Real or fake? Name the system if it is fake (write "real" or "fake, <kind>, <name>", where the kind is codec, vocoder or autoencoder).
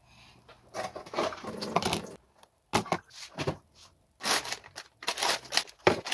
real